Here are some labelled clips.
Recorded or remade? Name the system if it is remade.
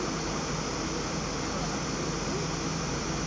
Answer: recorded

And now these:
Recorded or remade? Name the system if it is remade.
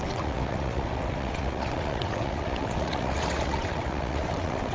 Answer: remade, vocoder, WaveNeXt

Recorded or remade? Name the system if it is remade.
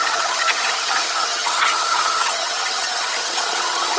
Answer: remade, vocoder, HiFi-GAN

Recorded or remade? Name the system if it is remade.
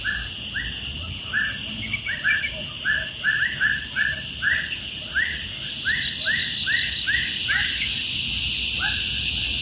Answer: recorded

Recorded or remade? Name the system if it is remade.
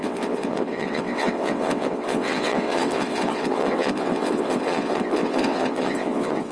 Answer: remade, vocoder, WaveNeXt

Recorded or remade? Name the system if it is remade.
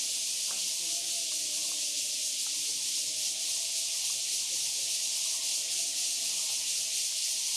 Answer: recorded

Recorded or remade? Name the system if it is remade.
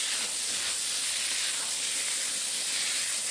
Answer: recorded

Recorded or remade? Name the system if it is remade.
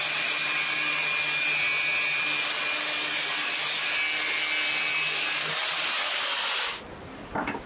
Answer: recorded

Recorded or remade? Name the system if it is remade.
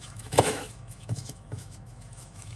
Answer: remade, autoencoder, DAC-VAE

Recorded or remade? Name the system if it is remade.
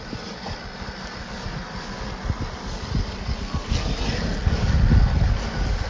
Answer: recorded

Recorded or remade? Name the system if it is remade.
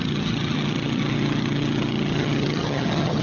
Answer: remade, vocoder, HiFi-GAN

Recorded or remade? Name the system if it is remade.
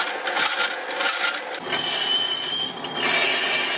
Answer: recorded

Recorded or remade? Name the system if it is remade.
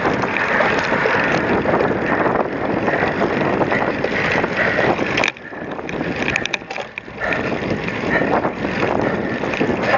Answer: recorded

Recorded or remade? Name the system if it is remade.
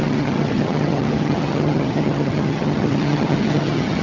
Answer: remade, vocoder, HiFi-GAN